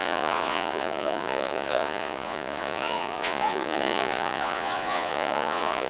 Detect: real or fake fake